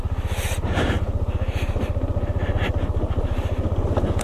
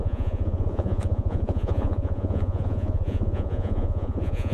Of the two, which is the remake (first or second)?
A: second